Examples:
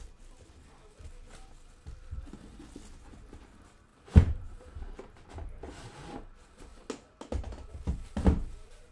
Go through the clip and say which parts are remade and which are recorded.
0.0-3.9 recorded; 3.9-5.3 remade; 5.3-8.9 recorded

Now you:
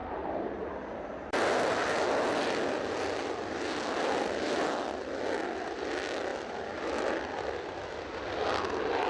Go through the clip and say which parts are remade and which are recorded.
0.0-1.4 remade; 1.4-6.3 recorded; 6.3-7.1 remade; 7.1-9.1 recorded

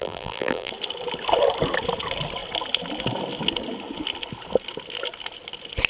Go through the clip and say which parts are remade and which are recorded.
0.0-0.7 remade; 0.7-5.9 recorded

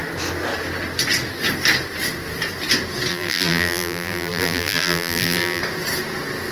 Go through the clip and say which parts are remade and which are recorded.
0.0-3.1 recorded; 3.1-5.6 remade; 5.6-6.5 recorded

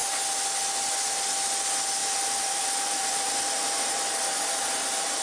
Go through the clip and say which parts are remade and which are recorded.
0.0-2.0 recorded; 2.0-4.4 remade; 4.4-5.2 recorded

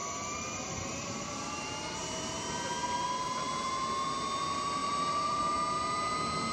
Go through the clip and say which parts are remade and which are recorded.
0.0-2.4 remade; 2.4-2.8 recorded; 2.8-3.7 remade; 3.7-4.8 recorded; 4.8-5.4 remade; 5.4-6.5 recorded